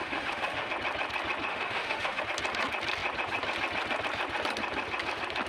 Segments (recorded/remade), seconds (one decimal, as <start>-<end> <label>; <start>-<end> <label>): 0.0-0.7 remade; 0.7-1.5 recorded; 1.5-2.2 remade; 2.2-5.5 recorded